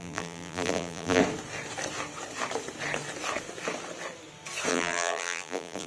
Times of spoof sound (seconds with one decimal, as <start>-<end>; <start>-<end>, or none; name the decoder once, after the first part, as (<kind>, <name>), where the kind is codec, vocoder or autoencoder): 0.0-1.2 (vocoder, BigVGAN v2); 4.7-5.9

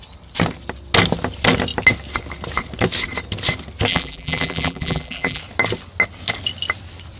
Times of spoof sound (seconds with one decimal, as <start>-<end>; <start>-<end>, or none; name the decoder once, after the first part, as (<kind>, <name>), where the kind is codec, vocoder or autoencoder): 3.9-5.4 (vocoder, BigVGAN v2)

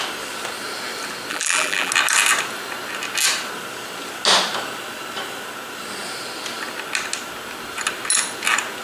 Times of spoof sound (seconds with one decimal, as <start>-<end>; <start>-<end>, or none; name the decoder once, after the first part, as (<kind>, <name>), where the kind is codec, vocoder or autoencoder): 1.3-1.9 (vocoder, BigVGAN v2)